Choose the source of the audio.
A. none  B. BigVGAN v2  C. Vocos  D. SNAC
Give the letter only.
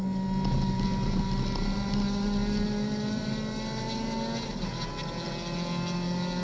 A